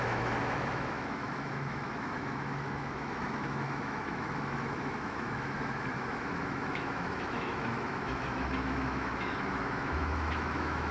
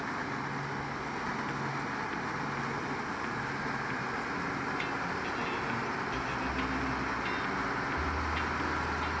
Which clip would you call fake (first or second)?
first